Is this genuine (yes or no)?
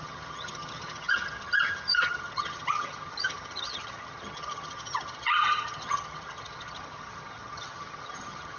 no